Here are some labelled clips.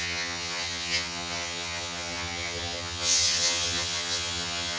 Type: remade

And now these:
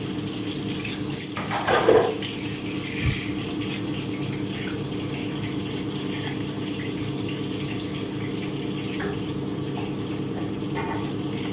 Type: recorded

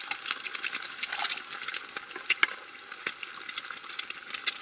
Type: recorded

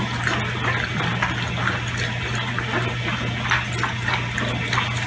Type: recorded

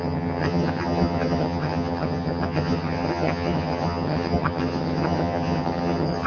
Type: remade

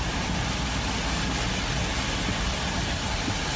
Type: recorded